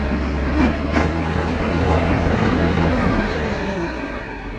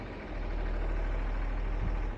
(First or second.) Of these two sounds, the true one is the second